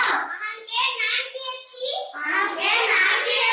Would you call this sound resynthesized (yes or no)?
no